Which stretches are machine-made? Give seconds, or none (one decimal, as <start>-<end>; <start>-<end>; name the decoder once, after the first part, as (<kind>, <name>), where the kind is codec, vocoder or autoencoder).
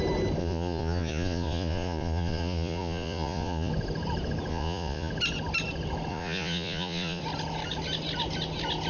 0.4-3.7 (vocoder, Vocos); 4.5-5.1; 6.1-7.2